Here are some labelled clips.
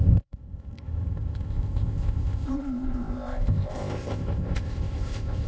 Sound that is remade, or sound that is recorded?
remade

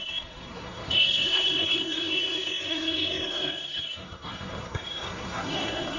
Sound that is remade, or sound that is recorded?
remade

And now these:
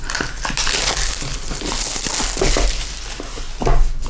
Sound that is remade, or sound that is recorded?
recorded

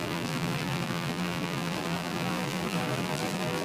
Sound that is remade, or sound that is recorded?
remade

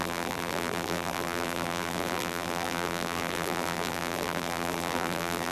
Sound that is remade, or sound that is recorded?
remade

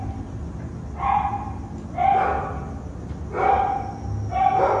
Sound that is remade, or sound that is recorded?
recorded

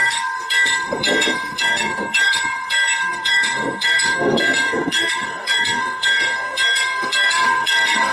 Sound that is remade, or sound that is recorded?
remade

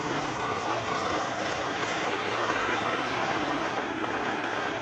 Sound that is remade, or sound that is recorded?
remade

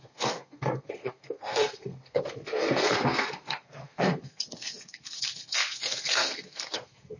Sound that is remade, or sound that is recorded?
remade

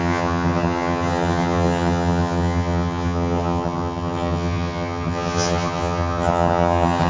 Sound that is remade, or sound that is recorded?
remade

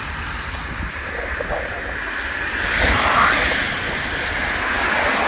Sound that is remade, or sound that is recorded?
recorded